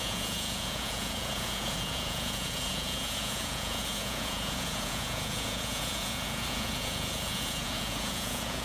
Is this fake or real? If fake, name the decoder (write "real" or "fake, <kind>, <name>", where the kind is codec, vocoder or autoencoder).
fake, vocoder, Vocos